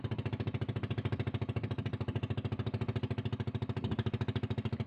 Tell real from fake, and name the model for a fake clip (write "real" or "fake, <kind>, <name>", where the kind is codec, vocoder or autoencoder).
real